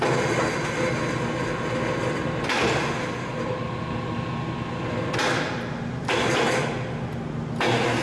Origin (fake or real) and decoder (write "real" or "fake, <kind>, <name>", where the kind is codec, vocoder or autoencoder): real